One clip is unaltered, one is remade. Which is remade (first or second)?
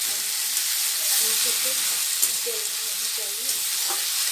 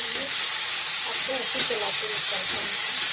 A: second